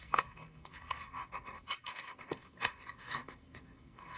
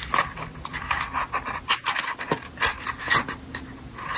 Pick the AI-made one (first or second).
first